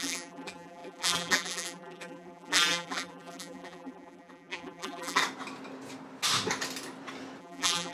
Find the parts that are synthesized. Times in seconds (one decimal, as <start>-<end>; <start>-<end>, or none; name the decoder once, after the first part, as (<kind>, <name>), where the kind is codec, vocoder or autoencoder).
0.0-5.2 (vocoder, BigVGAN v2); 7.4-7.9